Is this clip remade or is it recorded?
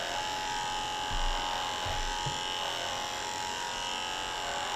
recorded